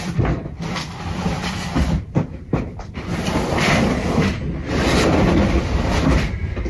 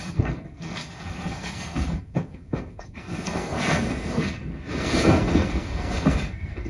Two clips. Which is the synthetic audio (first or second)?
second